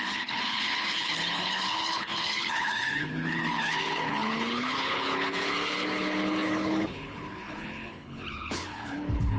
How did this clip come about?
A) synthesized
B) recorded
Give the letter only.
A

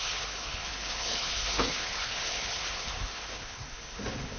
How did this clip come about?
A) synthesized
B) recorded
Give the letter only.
A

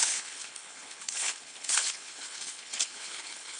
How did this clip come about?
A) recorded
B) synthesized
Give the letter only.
B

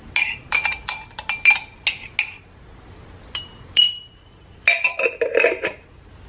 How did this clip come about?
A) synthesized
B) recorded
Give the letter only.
B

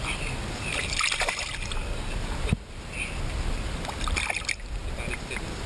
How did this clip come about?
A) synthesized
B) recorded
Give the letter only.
B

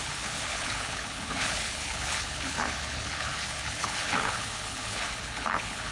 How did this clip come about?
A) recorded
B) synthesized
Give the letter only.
B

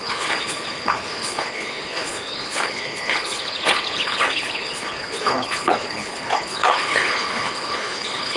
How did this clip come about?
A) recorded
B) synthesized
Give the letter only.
B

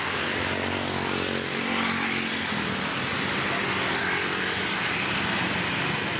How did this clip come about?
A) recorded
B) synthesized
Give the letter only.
A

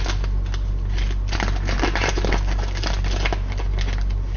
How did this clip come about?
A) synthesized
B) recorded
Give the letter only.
B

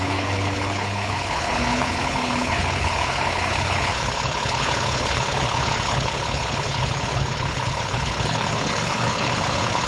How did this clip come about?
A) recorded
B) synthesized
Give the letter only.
B